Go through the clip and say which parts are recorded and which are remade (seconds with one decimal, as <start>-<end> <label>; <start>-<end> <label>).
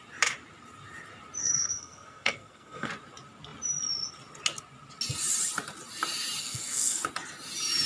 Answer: 0.0-1.4 recorded; 1.4-2.9 remade; 2.9-6.4 recorded; 6.4-7.0 remade; 7.0-7.9 recorded